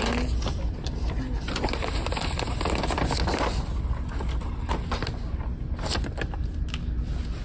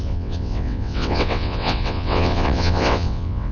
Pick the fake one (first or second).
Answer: second